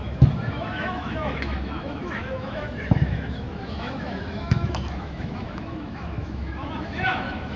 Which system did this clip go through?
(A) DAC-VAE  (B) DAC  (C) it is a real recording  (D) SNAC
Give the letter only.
A